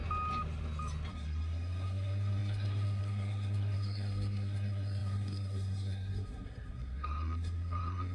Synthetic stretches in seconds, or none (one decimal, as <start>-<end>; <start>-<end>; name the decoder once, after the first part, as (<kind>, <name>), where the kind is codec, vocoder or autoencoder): 1.1-8.1 (codec, SNAC)